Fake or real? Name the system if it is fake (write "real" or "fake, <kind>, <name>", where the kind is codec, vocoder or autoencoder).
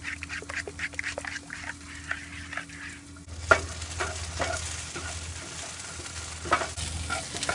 real